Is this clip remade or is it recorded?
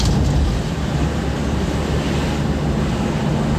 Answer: recorded